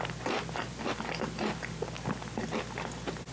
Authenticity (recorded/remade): recorded